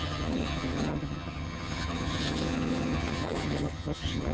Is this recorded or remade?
remade